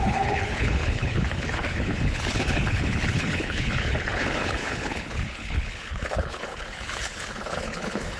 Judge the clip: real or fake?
fake